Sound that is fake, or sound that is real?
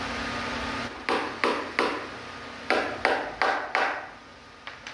real